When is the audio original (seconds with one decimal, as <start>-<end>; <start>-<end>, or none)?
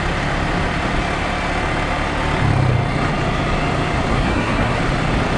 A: 0.0-4.1; 4.8-5.4